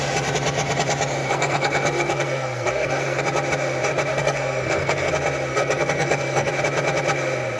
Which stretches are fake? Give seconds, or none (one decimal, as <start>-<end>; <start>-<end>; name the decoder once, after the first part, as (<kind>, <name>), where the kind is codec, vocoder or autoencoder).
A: 1.2-3.2 (codec, SNAC); 4.1-5.1; 5.5-6.5